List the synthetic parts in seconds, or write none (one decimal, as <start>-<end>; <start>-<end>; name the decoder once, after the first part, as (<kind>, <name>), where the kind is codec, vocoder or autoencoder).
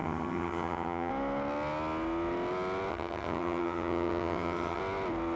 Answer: 0.0-1.1 (vocoder, HiFi-GAN); 2.9-4.8